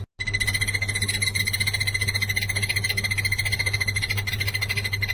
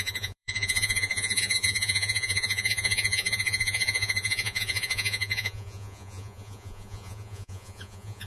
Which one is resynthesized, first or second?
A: second